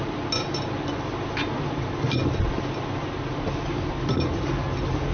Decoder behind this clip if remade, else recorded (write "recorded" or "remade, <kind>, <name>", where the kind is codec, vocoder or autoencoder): recorded